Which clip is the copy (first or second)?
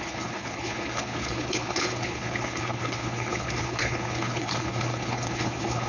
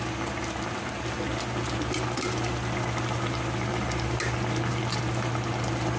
first